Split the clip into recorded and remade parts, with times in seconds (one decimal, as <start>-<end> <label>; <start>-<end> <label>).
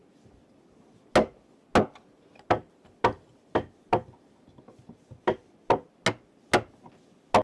0.0-7.4 recorded